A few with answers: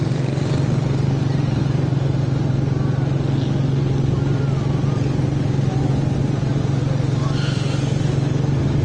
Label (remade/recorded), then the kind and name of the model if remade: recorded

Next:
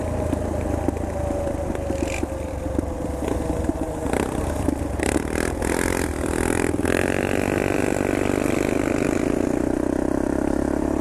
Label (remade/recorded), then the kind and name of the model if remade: recorded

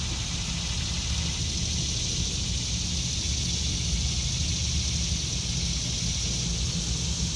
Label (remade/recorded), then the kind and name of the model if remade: recorded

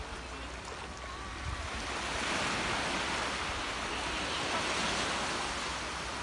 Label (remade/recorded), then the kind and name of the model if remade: recorded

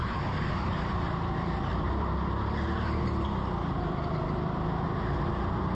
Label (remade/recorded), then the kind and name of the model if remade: recorded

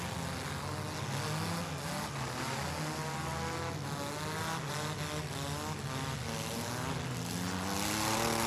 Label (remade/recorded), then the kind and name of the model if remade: recorded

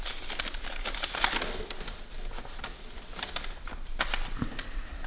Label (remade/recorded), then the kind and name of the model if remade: recorded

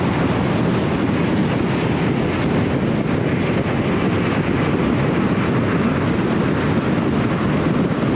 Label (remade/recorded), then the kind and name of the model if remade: recorded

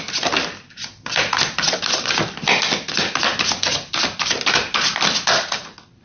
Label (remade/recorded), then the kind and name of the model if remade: recorded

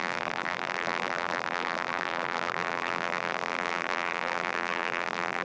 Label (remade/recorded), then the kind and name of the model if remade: remade, vocoder, BigVGAN v2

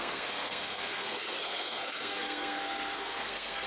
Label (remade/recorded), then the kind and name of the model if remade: remade, codec, SNAC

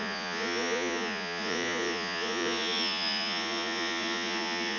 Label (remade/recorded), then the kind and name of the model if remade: remade, vocoder, Vocos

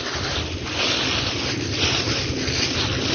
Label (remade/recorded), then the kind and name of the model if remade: recorded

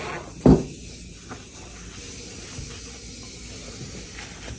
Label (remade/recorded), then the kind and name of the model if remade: recorded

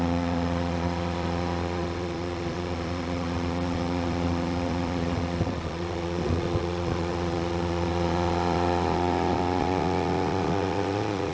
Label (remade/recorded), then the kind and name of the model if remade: remade, vocoder, Vocos